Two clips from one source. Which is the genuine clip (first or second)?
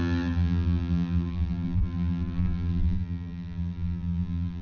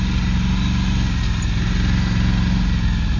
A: second